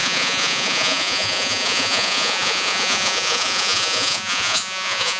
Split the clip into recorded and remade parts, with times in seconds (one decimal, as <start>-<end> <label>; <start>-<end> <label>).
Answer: 0.0-5.2 remade